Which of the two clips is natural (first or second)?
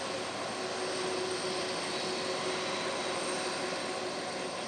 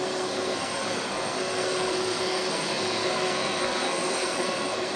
first